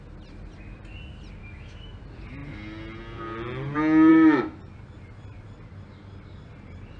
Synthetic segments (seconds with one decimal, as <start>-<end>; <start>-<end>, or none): 1.4-2.0; 4.1-4.6